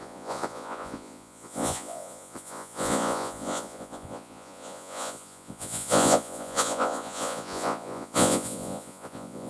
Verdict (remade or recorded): remade